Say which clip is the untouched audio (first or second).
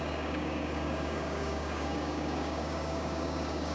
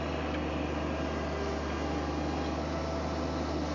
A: second